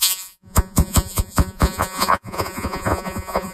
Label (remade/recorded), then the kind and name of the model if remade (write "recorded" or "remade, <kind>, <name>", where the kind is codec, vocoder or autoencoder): remade, vocoder, Vocos